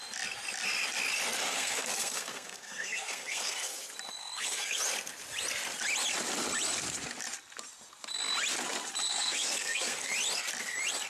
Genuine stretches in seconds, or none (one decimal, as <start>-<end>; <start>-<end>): 0.0-1.5; 3.8-4.2; 4.8-9.1; 10.1-11.1

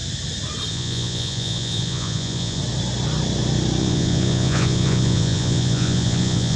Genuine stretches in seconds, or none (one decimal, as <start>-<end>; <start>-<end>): 0.0-0.7; 2.6-3.8

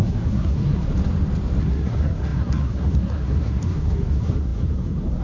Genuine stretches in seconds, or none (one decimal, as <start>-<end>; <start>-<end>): 0.9-1.6

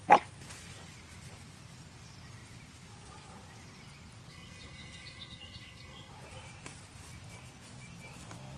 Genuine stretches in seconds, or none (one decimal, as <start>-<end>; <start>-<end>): 0.0-4.3; 6.1-8.6

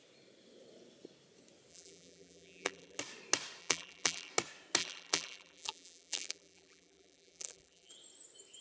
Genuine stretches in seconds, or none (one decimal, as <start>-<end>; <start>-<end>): 0.0-1.7; 3.0-3.6; 4.3-4.8; 7.9-8.6